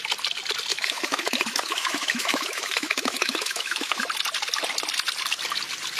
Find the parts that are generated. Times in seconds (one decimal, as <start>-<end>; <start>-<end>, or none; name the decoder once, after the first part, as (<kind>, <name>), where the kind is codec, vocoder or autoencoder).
0.7-4.0 (autoencoder, DAC-VAE)